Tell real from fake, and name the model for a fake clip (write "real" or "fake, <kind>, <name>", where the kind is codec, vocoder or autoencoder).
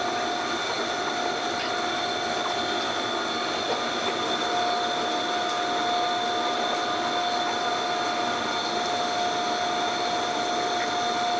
real